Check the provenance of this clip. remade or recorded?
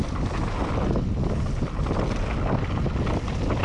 recorded